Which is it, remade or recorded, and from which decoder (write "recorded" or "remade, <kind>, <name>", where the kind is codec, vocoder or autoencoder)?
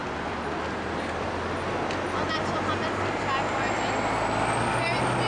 recorded